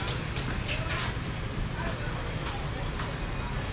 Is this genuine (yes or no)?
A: yes